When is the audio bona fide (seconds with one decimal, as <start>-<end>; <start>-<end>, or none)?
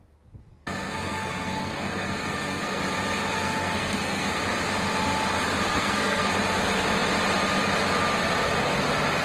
0.0-0.5; 2.8-3.3; 4.4-5.7; 6.3-9.2